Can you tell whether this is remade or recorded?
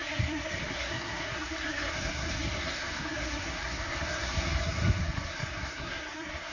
remade